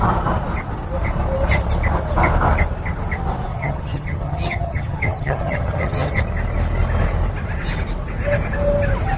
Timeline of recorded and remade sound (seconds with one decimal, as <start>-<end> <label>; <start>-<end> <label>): 0.0-3.5 recorded; 3.5-6.2 remade; 6.2-9.2 recorded